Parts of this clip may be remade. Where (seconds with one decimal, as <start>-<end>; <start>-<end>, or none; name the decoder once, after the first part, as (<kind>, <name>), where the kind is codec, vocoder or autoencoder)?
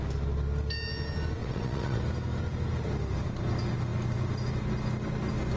1.4-2.0 (vocoder, WaveNeXt)